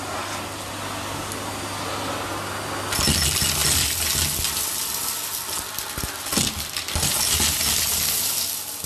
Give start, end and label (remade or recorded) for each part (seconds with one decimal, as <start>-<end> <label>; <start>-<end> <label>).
0.0-8.9 recorded